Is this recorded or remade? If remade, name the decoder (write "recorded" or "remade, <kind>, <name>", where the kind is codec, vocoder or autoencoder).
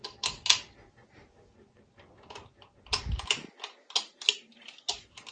recorded